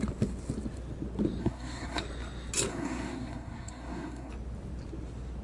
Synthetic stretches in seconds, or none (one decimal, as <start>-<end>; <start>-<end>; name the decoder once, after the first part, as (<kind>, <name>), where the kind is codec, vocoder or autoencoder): 1.4-2.0 (codec, SNAC); 2.7-4.3